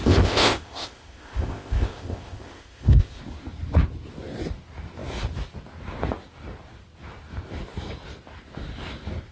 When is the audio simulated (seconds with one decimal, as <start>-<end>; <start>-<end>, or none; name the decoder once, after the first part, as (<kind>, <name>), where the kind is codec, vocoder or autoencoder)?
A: 0.0-3.2 (codec, ZipCodec)